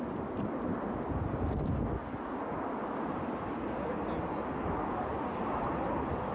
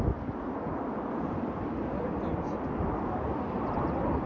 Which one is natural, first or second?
first